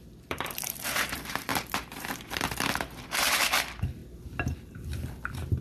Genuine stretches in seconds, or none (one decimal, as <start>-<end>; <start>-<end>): none